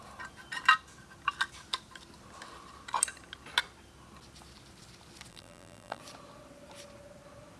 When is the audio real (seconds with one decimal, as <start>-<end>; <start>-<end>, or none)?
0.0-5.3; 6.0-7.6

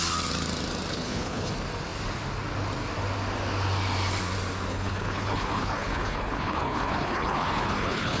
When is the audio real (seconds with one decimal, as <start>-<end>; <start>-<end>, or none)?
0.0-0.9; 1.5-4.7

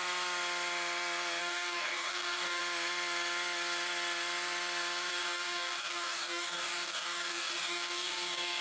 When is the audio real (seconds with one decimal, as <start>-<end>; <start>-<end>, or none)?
0.0-1.4; 2.6-5.1

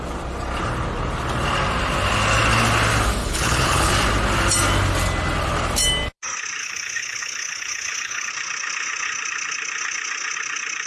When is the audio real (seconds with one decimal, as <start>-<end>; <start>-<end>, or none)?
0.0-3.2; 3.9-6.6; 8.3-10.9

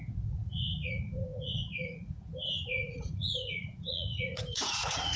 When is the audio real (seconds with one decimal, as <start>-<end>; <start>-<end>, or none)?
none